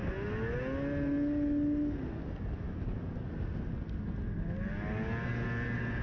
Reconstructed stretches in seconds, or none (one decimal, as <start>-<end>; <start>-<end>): none